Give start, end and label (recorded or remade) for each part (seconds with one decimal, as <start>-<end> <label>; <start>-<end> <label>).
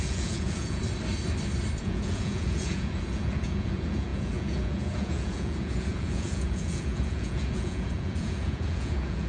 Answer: 0.0-0.8 remade; 0.8-1.8 recorded; 1.8-9.3 remade